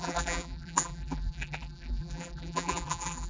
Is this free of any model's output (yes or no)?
no